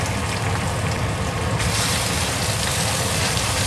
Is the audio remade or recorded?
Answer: recorded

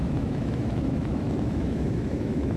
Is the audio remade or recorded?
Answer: remade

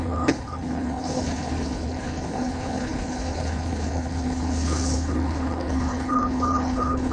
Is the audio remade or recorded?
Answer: remade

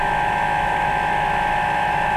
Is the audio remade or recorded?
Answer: remade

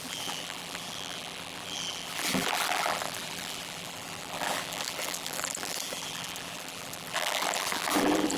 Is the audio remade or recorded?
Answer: remade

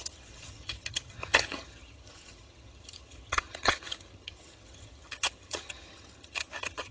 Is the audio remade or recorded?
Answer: remade